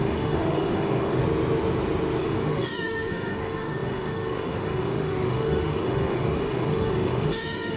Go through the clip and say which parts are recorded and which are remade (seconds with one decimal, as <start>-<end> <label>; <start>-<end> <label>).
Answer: 0.0-1.2 remade; 1.2-2.2 recorded; 2.2-7.8 remade